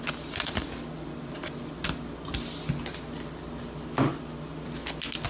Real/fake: real